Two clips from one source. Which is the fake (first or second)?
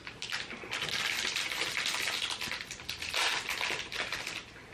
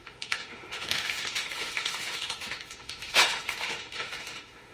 second